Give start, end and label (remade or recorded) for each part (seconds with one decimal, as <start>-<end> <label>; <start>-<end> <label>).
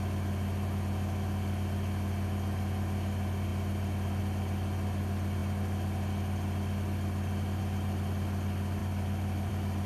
0.0-8.8 recorded; 8.8-9.5 remade; 9.5-9.9 recorded